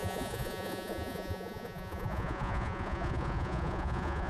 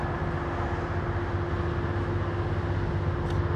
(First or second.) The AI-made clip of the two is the first